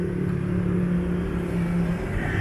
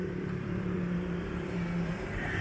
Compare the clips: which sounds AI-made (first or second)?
second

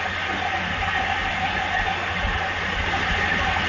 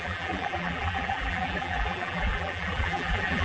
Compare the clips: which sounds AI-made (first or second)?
second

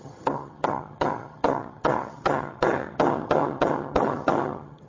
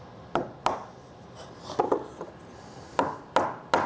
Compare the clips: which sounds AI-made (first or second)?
first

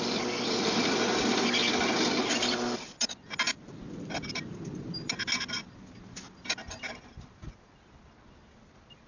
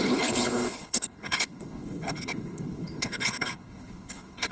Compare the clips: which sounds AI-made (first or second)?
second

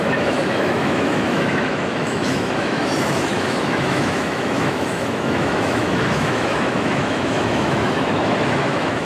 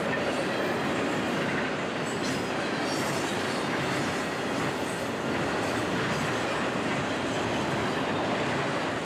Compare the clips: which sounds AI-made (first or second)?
first